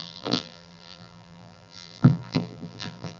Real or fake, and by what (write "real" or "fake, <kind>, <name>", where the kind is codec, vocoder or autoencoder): fake, vocoder, BigVGAN v2